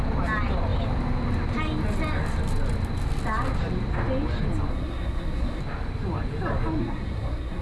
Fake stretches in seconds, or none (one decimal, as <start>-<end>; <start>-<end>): 4.7-5.6; 6.8-7.6